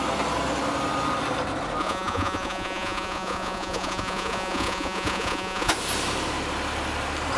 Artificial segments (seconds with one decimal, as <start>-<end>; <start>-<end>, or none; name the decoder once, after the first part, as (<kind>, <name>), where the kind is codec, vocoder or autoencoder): 1.8-5.7 (vocoder, Vocos)